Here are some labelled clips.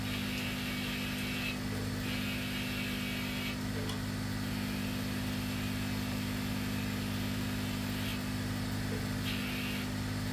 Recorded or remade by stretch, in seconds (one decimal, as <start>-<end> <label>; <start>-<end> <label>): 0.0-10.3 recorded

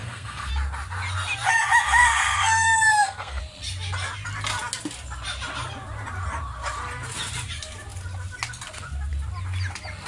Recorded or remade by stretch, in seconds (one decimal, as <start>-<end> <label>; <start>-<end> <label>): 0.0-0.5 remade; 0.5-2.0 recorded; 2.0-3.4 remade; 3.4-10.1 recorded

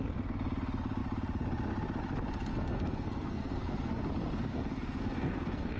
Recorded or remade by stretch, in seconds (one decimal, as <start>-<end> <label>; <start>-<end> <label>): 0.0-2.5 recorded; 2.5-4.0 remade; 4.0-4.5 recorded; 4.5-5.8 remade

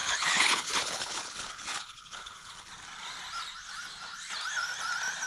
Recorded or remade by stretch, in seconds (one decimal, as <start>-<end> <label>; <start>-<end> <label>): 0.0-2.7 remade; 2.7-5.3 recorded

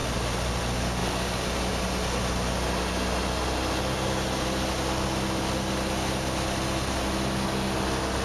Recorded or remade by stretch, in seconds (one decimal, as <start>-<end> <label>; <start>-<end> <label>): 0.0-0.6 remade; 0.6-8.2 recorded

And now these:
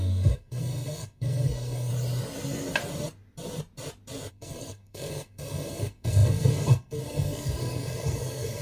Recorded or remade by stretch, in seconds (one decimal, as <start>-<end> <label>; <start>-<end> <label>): 0.0-1.9 remade; 1.9-4.3 recorded; 4.3-8.6 remade

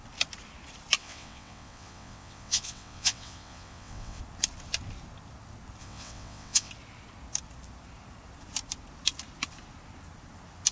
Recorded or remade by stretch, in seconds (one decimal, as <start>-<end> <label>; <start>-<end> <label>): 0.0-1.0 recorded; 1.0-4.2 remade; 4.2-5.8 recorded; 5.8-6.7 remade; 6.7-10.7 recorded